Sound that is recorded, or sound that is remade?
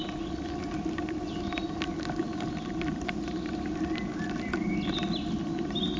recorded